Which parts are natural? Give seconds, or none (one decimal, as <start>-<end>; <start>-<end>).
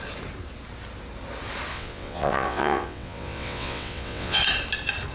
0.0-1.7; 4.4-5.1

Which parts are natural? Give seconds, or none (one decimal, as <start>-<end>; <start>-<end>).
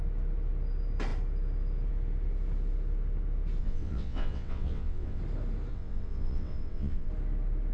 0.0-3.6; 5.2-5.7; 7.1-7.7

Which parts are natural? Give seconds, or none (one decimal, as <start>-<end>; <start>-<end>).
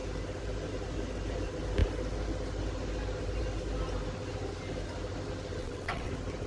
0.0-5.6; 6.1-6.5